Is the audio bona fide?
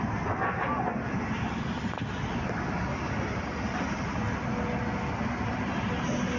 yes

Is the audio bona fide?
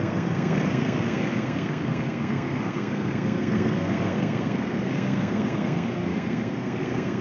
no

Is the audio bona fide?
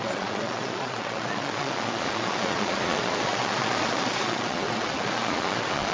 no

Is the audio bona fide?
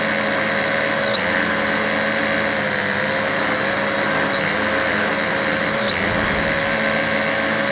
yes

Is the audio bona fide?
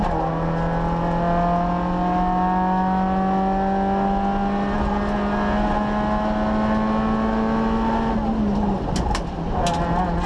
yes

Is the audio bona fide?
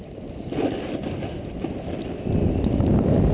yes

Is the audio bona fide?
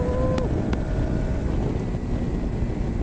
yes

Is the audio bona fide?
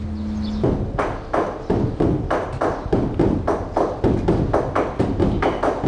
yes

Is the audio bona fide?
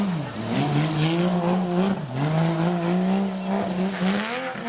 yes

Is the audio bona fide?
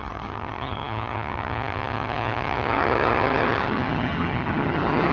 no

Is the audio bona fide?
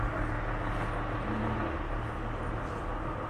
yes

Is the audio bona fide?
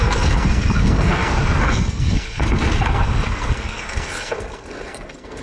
no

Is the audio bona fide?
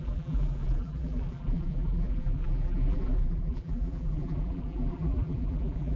no